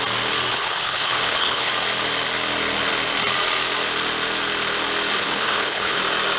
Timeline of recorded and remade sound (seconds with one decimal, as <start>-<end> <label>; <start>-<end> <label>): 0.0-0.5 recorded; 0.5-1.7 remade; 1.7-5.1 recorded; 5.1-6.0 remade; 6.0-6.4 recorded